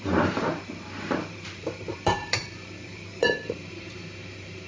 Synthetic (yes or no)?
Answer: yes